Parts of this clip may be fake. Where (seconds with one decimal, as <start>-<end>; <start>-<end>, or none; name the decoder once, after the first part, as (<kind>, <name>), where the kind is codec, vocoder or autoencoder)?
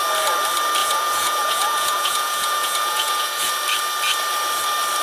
0.8-3.5 (vocoder, Vocos)